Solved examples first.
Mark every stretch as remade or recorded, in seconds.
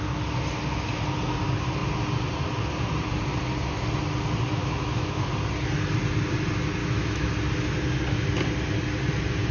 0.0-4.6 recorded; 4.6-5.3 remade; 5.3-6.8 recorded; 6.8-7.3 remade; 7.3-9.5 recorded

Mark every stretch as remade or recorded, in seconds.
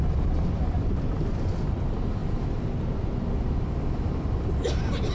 0.0-5.1 recorded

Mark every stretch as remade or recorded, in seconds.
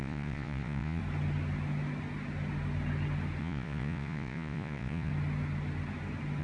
0.0-1.0 remade; 1.0-3.4 recorded; 3.4-5.1 remade; 5.1-6.4 recorded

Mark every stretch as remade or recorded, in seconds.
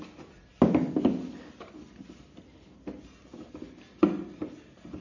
0.0-5.0 recorded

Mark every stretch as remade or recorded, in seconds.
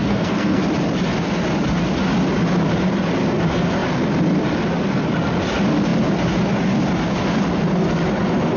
0.0-0.6 remade; 0.6-8.6 recorded